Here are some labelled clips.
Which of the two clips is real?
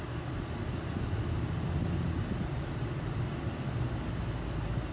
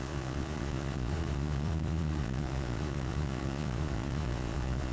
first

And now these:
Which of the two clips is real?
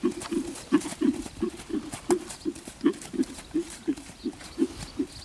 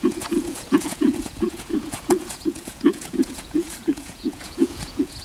first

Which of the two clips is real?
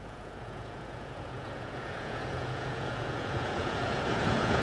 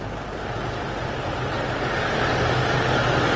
second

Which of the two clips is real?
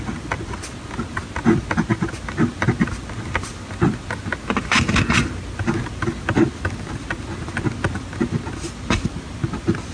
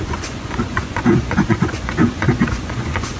first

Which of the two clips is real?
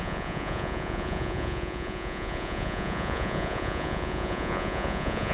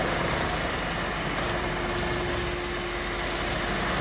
second